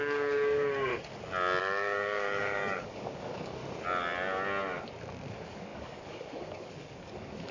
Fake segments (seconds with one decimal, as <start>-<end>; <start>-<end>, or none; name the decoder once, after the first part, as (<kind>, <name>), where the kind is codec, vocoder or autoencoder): 0.0-0.9 (codec, DAC); 1.6-3.6; 5.3-7.5